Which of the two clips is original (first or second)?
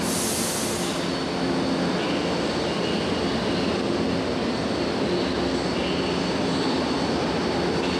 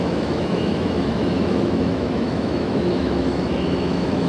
first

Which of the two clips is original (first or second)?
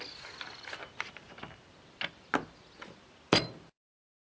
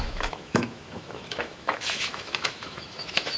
first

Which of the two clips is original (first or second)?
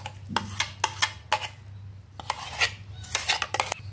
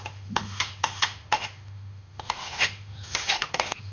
first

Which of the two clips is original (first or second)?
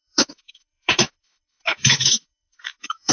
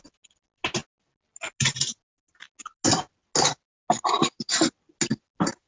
second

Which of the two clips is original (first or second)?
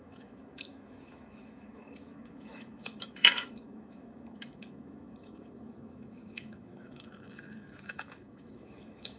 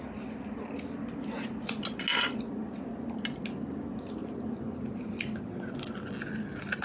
second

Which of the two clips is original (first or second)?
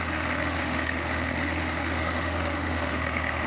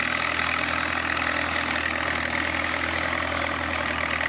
second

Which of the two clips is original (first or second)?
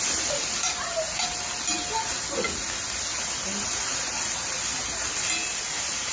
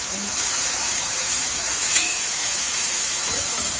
first